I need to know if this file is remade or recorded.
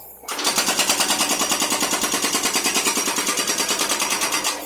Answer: recorded